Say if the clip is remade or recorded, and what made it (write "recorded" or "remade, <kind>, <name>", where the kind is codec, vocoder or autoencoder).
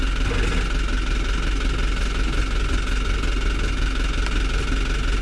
recorded